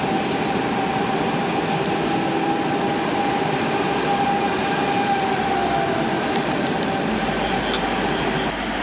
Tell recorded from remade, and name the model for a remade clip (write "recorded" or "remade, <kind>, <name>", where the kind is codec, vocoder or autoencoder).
recorded